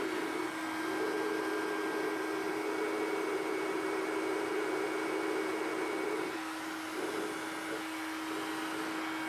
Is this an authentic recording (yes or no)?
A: yes